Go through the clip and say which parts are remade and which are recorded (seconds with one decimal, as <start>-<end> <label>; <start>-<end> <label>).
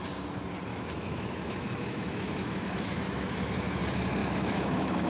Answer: 0.0-0.7 recorded; 0.7-3.8 remade; 3.8-4.2 recorded; 4.2-5.1 remade